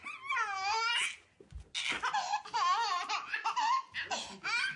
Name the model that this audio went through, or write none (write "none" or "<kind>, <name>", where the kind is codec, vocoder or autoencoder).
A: none